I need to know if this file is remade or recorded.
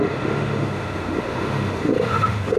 remade